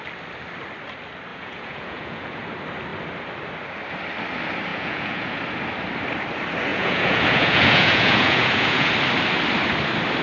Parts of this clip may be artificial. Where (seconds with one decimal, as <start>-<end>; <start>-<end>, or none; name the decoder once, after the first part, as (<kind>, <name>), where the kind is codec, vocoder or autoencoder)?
1.3-2.4 (vocoder, Vocos); 4.7-5.4; 6.7-8.9